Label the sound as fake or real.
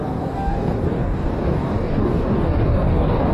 fake